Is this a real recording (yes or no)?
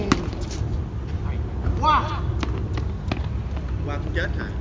yes